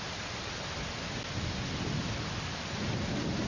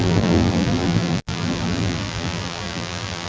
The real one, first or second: first